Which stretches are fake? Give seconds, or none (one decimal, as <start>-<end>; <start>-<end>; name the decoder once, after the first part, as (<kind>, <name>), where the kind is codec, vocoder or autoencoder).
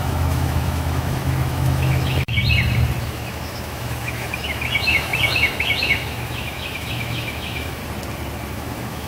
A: 0.0-2.4 (autoencoder, DAC-VAE); 3.0-7.8; 8.5-9.1